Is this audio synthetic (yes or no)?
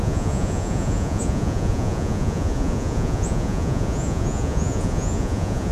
yes